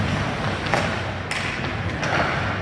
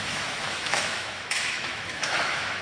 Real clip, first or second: first